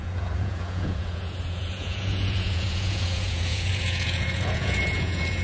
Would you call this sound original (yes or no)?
no